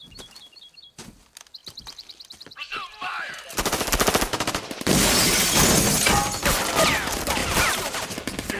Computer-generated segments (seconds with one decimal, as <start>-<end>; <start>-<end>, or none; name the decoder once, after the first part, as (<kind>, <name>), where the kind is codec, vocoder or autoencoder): 1.6-6.6 (vocoder, BigVGAN v2); 7.4-8.1